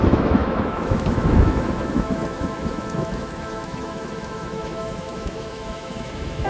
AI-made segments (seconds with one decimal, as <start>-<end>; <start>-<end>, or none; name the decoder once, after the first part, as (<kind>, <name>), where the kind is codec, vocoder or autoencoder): 0.0-6.5 (autoencoder, DAC-VAE)